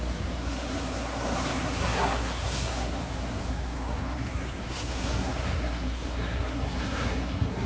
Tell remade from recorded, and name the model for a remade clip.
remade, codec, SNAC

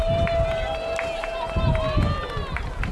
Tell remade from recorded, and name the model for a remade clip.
recorded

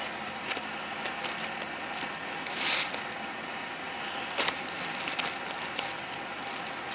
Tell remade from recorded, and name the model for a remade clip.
recorded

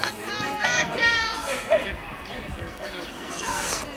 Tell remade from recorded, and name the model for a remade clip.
remade, codec, SNAC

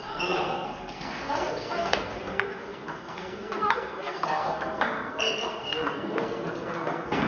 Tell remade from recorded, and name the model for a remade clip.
remade, codec, SNAC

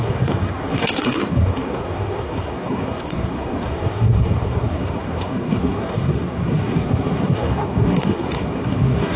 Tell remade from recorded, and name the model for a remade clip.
remade, codec, SNAC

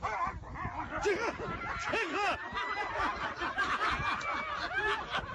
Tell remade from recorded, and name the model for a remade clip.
recorded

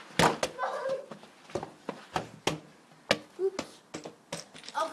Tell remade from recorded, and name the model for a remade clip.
recorded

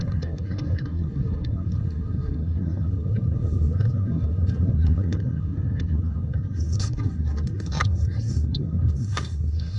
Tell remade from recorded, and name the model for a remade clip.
remade, codec, SNAC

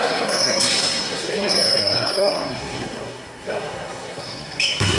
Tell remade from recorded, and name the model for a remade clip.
remade, codec, SNAC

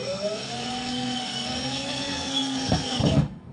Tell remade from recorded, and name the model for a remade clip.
remade, codec, SNAC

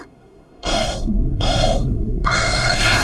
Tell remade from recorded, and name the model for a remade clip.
remade, codec, SNAC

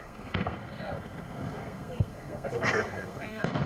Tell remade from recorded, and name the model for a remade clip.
remade, codec, SNAC